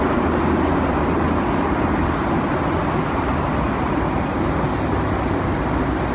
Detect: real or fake real